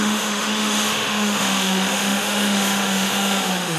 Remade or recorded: remade